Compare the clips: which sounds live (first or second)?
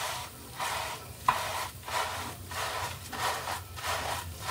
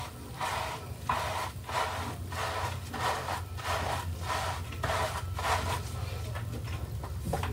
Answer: second